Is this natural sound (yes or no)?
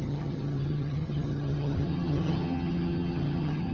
no